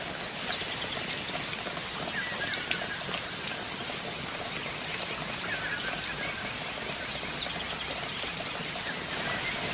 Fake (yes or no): no